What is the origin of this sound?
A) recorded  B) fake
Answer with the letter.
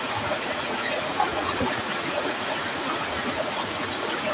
B